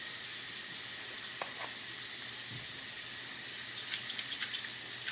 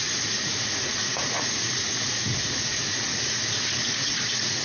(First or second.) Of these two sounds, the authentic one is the first